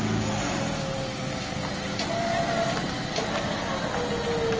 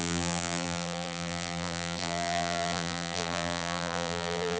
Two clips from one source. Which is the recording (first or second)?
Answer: first